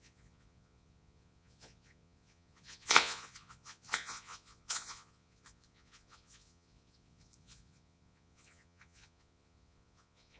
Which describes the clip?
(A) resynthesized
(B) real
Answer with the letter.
A